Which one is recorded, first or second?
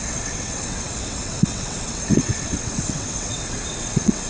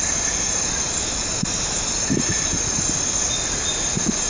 second